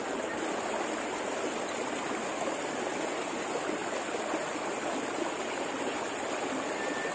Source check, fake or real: real